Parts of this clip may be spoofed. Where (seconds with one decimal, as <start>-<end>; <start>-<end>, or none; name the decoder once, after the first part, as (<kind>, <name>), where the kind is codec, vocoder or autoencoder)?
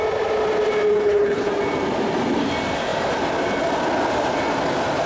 0.9-1.5 (codec, HILCodec)